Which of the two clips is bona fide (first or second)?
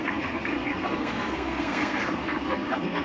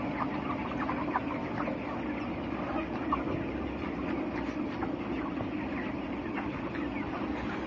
second